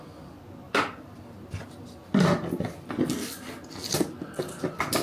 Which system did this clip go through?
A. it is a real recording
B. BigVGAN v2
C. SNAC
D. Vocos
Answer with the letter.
A